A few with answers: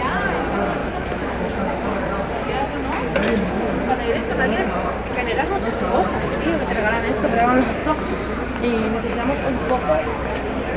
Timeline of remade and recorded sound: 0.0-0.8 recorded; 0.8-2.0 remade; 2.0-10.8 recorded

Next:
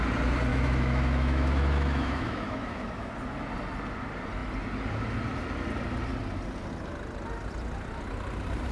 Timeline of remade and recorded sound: 0.0-0.5 recorded; 0.5-3.1 remade; 3.1-8.7 recorded

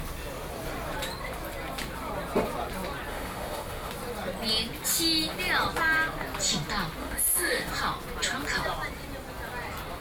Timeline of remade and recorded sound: 0.0-3.1 recorded; 3.1-3.9 remade; 3.9-7.0 recorded; 7.0-7.7 remade; 7.7-10.0 recorded

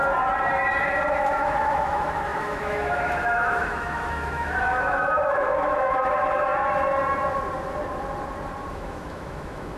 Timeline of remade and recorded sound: 0.0-1.1 recorded; 1.1-6.5 remade; 6.5-8.7 recorded; 8.7-9.8 remade

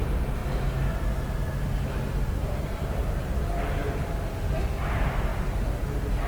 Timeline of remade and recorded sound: 0.0-6.3 recorded